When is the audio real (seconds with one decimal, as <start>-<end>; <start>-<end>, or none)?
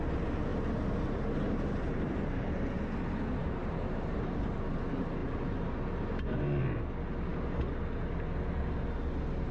0.0-0.5; 2.8-3.4; 4.5-9.5